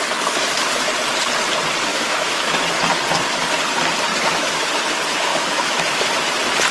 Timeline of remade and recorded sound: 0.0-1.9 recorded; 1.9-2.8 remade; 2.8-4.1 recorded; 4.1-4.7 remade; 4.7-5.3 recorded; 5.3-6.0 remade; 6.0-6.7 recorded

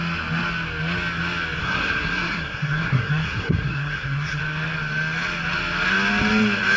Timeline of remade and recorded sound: 0.0-1.6 recorded; 1.6-4.4 remade; 4.4-6.8 recorded